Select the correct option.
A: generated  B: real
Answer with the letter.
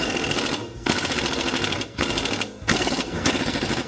A